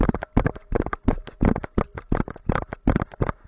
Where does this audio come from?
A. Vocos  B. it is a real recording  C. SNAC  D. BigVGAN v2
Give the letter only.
B